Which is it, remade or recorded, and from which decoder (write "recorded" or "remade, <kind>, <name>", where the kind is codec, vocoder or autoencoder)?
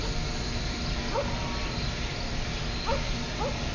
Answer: recorded